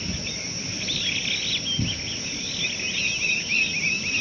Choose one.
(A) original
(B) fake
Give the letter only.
A